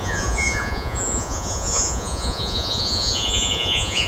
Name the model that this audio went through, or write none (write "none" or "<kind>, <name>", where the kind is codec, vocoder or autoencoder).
vocoder, Vocos